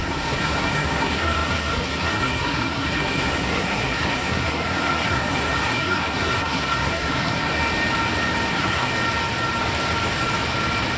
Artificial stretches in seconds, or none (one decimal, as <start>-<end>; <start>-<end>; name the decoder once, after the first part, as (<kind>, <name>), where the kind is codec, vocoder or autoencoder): 0.0-7.5 (codec, SNAC); 8.5-8.9